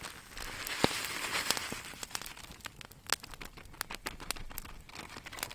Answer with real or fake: real